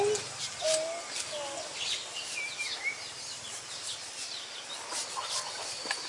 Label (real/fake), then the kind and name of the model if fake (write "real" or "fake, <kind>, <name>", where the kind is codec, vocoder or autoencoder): real